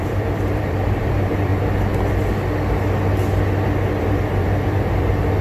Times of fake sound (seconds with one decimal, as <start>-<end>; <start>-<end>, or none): 0.0-1.5; 4.0-5.4